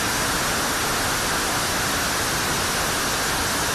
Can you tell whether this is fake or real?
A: real